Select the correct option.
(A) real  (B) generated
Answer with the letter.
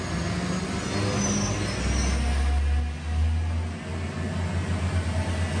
A